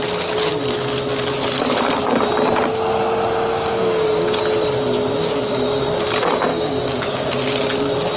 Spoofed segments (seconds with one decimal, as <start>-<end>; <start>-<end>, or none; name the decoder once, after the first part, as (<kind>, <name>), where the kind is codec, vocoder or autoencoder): 3.5-4.4 (codec, DAC); 5.1-5.8; 6.5-7.2